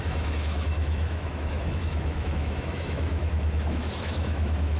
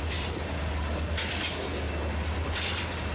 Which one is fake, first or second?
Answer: first